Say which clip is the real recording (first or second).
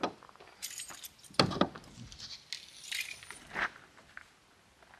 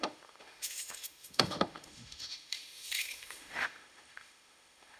first